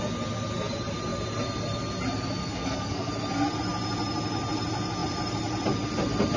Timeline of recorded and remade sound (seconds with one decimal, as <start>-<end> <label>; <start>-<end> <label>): 0.0-2.4 recorded; 2.4-3.1 remade; 3.1-6.4 recorded